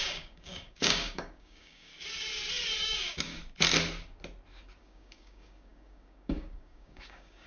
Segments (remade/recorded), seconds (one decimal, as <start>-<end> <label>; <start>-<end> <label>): 0.0-1.9 remade; 1.9-2.8 recorded; 2.8-3.4 remade; 3.4-4.8 recorded; 4.8-7.5 remade